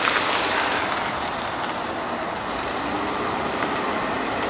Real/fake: real